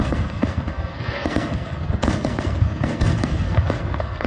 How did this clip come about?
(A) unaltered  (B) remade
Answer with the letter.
B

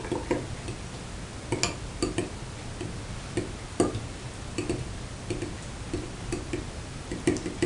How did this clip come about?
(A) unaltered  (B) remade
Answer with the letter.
A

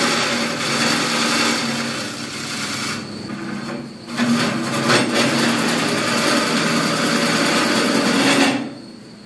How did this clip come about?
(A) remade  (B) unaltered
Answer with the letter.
B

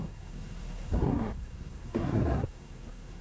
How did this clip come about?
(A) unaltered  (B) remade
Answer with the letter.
B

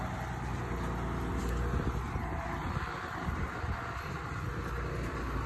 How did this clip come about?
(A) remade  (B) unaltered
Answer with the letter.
B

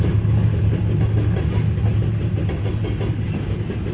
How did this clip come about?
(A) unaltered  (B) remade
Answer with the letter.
A